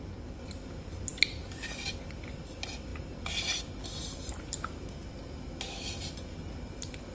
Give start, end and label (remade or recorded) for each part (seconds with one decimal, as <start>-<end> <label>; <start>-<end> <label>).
0.0-7.1 recorded